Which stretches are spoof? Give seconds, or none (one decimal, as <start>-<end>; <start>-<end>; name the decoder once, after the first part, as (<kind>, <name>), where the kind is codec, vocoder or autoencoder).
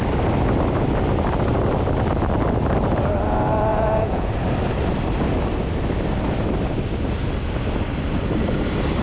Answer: 3.7-4.3 (vocoder, Vocos)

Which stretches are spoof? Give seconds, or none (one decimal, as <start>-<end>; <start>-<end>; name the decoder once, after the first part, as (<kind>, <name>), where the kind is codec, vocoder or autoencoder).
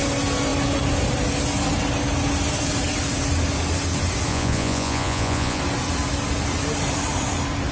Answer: 4.3-5.6 (vocoder, Vocos)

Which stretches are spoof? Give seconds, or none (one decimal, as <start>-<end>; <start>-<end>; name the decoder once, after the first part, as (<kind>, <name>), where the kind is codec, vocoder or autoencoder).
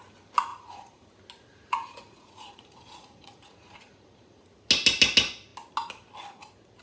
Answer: 0.5-1.0 (vocoder, Vocos); 1.5-4.4